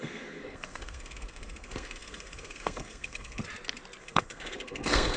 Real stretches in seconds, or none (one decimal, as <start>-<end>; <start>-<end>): 3.4-4.0